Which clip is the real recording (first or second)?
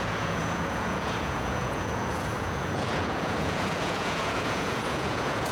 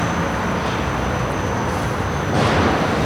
second